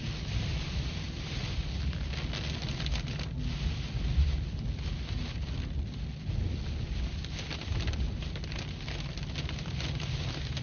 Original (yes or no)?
yes